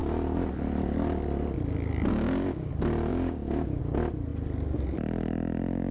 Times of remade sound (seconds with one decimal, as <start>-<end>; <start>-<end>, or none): 2.1-2.7; 3.1-3.8